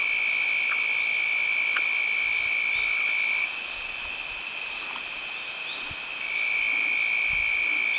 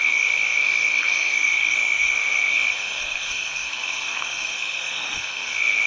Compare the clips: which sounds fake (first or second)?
second